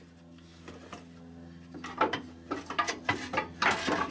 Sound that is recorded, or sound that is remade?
recorded